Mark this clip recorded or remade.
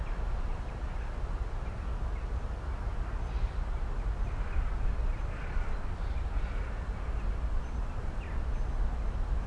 recorded